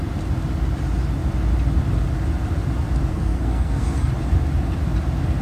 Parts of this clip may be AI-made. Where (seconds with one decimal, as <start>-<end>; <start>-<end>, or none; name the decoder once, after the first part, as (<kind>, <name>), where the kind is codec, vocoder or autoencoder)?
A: 3.1-4.1 (codec, SNAC)